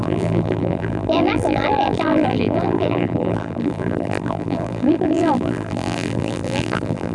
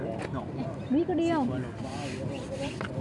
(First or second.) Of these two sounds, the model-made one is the first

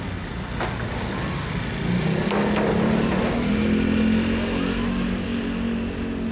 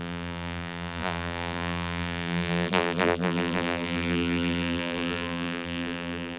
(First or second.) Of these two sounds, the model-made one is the second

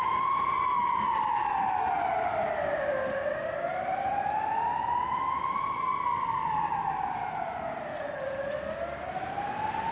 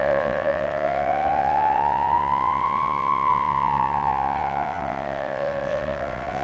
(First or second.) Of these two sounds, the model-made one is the second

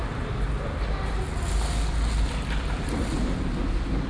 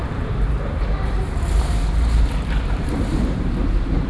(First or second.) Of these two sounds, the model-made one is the second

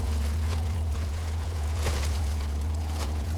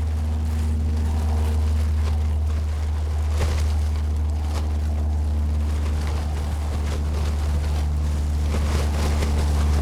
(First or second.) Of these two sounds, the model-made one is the first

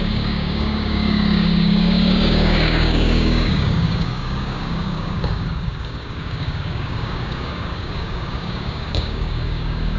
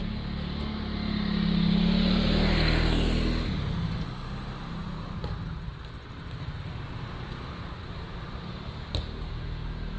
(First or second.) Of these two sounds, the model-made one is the first